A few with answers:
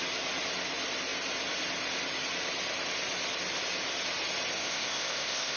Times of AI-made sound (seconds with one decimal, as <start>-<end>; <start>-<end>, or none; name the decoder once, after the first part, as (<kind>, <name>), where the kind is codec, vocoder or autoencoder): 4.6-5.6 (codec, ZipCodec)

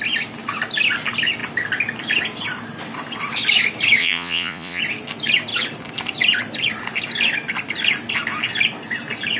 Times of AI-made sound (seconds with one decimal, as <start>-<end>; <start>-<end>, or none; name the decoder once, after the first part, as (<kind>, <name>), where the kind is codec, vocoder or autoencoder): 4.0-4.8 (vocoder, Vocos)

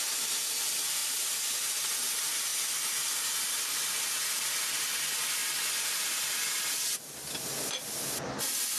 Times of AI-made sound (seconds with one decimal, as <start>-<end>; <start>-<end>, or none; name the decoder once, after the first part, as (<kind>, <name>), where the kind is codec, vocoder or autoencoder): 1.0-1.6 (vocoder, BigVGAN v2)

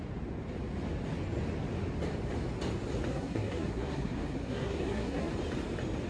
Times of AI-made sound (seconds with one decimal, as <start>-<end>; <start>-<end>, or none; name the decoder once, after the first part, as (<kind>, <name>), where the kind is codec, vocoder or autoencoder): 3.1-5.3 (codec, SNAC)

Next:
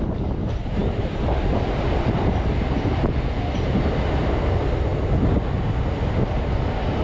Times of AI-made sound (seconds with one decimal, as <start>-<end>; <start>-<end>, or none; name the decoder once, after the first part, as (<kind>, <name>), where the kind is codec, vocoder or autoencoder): 0.8-2.3 (vocoder, BigVGAN v2)